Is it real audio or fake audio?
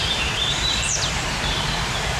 fake